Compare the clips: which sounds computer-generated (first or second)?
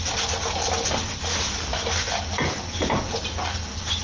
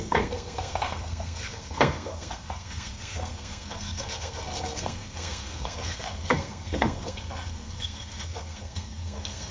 second